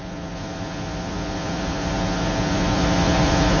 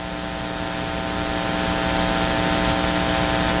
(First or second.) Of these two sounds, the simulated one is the first